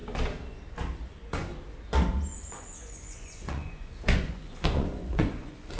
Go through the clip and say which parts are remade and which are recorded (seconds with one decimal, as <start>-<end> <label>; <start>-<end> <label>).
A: 0.0-1.1 recorded; 1.1-1.5 remade; 1.5-2.5 recorded; 2.5-5.8 remade